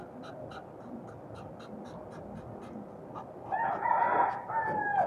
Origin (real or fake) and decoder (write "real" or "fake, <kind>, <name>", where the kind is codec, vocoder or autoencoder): real